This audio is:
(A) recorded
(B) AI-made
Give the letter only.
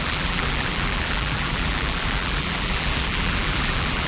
B